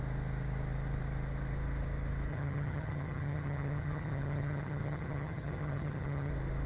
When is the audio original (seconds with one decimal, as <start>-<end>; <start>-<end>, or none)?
0.0-2.3; 6.3-6.7